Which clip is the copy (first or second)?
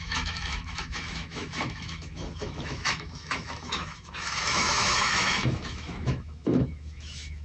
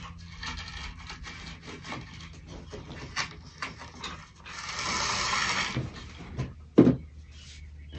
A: first